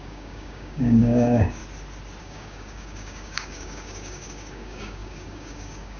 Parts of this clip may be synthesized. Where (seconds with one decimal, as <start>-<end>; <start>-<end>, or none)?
0.0-1.6; 2.2-6.0

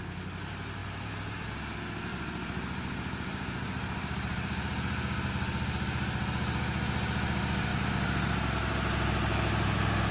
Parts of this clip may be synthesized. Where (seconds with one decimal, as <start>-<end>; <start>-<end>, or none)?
0.8-1.4; 2.1-5.3

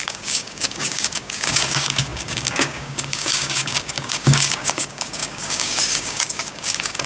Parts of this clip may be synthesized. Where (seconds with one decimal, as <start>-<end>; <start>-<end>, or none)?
0.0-7.1

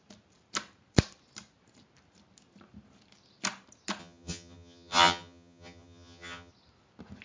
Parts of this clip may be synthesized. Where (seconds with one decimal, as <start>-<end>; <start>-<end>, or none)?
4.0-6.5

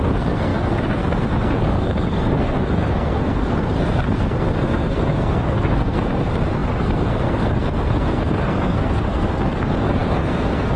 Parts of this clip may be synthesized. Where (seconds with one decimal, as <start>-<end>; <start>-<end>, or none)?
0.0-10.8

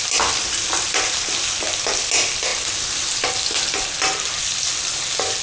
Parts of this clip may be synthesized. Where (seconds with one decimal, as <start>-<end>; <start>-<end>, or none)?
none